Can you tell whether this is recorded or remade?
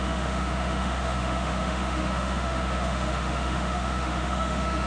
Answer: remade